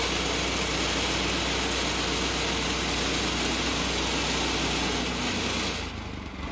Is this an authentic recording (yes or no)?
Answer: yes